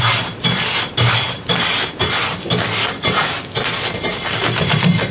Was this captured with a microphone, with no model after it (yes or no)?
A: yes